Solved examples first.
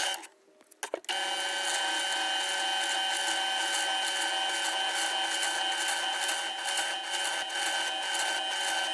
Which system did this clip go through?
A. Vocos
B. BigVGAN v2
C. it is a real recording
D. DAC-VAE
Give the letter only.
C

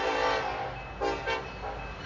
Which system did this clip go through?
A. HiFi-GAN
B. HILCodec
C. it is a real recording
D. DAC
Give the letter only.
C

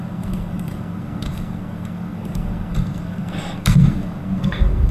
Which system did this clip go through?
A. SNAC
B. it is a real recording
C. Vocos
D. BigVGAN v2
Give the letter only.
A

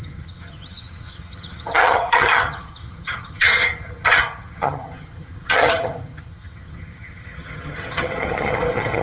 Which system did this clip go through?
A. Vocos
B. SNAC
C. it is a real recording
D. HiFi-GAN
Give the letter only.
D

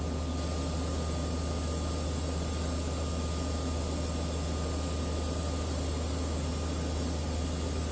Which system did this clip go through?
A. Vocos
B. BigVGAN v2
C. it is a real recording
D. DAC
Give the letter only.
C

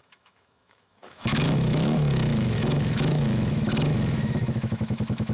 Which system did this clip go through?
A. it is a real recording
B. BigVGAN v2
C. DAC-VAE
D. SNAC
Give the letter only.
C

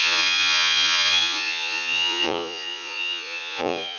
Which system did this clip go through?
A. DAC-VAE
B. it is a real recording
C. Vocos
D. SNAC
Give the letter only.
C